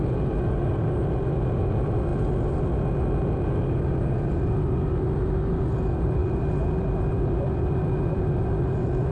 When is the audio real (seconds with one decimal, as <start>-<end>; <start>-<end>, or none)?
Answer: 0.0-9.1